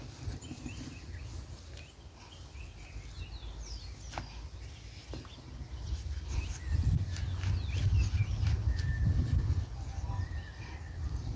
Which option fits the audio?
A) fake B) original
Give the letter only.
B